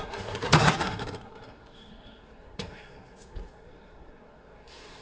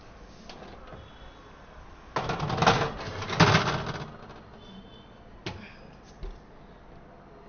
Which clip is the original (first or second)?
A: second